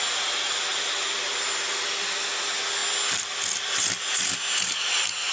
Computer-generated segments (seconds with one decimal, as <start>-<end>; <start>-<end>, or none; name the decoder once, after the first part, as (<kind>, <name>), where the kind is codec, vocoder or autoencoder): none